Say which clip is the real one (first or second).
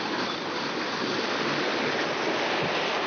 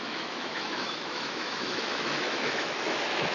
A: first